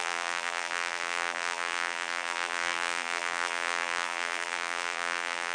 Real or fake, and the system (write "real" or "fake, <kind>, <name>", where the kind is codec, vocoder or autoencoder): fake, vocoder, BigVGAN v2